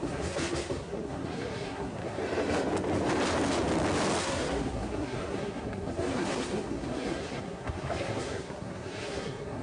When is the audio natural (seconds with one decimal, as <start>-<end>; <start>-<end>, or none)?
2.2-4.2